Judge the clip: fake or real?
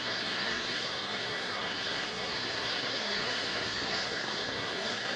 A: fake